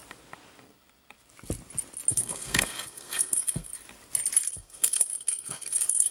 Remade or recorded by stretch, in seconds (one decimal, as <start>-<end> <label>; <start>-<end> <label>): 0.0-2.1 recorded; 2.1-3.7 remade; 3.7-4.5 recorded; 4.5-6.1 remade